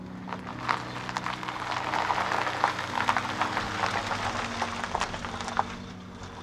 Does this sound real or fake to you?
real